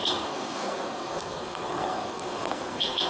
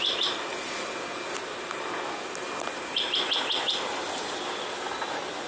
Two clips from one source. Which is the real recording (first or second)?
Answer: second